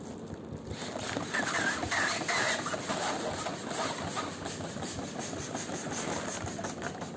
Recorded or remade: recorded